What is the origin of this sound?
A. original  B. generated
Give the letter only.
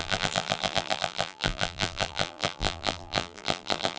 B